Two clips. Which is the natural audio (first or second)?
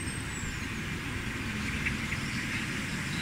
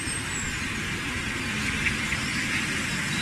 first